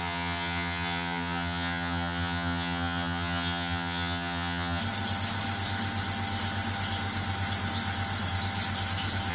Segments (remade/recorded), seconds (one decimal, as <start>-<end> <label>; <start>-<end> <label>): 0.0-4.8 remade; 4.8-9.3 recorded